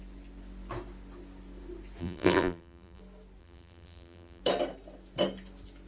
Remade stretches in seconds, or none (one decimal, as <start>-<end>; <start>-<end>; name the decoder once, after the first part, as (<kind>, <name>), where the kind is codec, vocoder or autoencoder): 2.0-3.0 (vocoder, BigVGAN v2); 3.4-4.4